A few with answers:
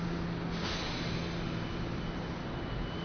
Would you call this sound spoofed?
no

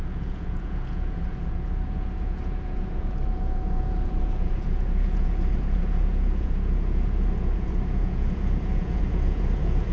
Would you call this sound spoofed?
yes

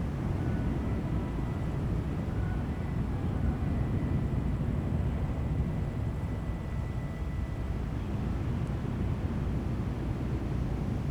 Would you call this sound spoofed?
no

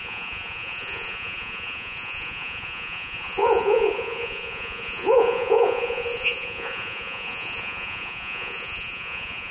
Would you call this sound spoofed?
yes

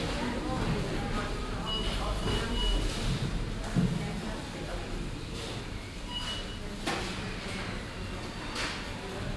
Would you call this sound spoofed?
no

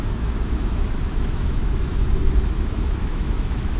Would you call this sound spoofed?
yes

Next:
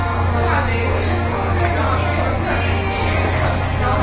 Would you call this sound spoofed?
no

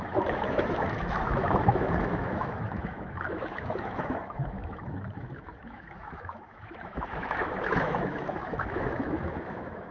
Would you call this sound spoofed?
yes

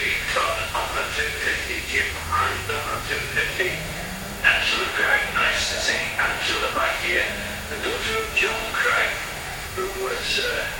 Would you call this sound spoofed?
yes